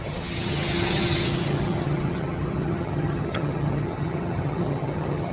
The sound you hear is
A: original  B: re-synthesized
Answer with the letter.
B